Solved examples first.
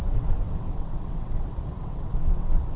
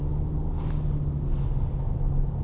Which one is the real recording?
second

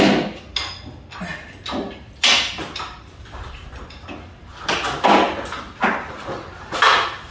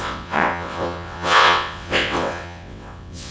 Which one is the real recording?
first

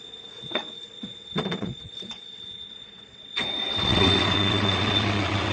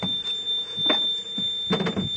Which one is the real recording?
second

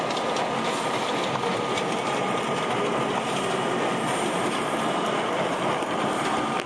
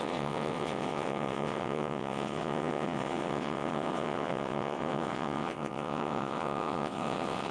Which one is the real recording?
first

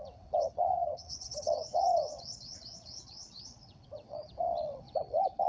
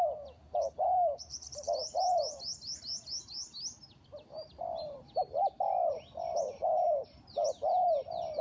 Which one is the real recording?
second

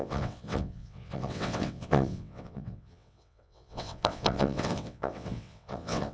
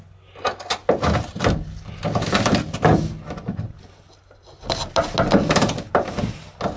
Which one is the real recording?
second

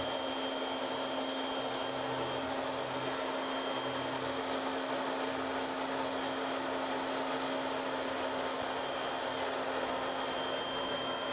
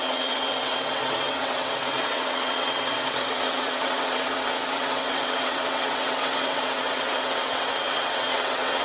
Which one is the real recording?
first